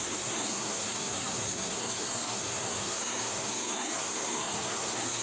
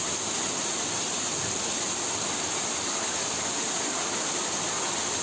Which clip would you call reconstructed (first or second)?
first